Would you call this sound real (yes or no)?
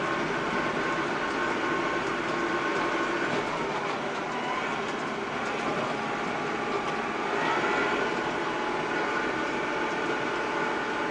yes